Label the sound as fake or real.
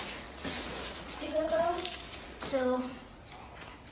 fake